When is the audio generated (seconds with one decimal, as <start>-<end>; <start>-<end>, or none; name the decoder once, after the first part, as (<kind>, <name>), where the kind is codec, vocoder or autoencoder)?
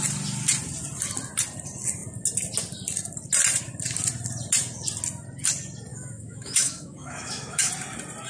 5.9-7.7 (autoencoder, DAC-VAE)